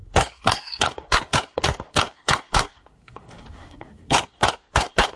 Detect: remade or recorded remade